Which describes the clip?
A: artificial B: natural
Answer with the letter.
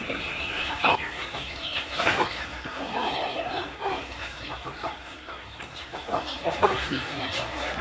A